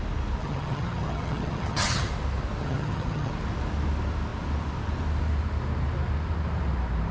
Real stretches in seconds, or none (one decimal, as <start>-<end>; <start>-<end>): 0.0-0.4; 2.1-2.6; 3.3-7.1